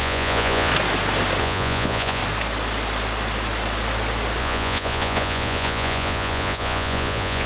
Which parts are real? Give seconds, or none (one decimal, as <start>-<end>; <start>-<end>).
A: 0.7-1.4; 2.2-4.4